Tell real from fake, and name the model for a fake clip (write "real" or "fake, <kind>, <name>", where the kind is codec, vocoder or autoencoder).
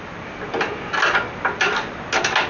real